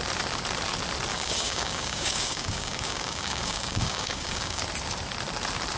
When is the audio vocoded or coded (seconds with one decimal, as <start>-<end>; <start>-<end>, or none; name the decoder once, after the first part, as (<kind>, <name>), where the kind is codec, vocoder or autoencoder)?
1.1-4.6 (codec, DAC)

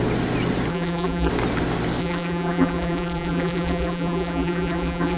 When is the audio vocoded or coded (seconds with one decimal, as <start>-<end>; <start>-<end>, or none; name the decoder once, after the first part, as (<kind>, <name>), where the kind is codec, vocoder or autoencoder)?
0.7-1.3 (vocoder, BigVGAN v2); 2.0-5.2

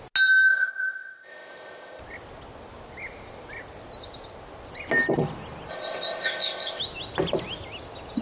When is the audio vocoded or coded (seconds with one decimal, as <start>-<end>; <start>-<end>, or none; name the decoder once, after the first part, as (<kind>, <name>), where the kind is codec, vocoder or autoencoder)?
0.5-2.0 (codec, ZipCodec); 5.7-6.8